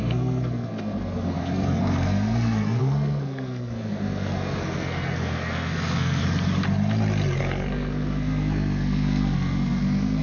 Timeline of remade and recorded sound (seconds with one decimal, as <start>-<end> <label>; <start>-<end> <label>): 0.0-6.2 remade; 6.2-7.4 recorded; 7.4-10.2 remade